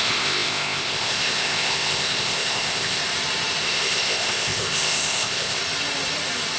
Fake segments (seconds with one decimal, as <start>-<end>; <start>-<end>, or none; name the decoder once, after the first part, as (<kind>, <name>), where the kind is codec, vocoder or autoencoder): 0.0-3.0 (codec, ZipCodec); 3.6-5.6